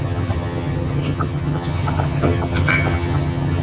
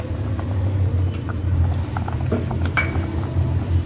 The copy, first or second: first